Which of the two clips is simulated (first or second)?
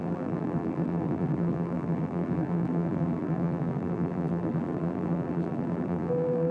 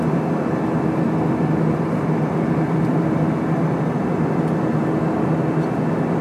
first